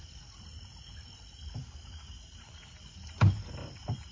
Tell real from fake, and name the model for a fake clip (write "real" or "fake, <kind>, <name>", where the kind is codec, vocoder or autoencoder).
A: real